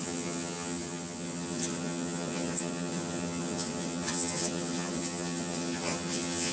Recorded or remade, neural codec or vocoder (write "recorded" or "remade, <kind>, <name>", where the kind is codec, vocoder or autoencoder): remade, vocoder, HiFi-GAN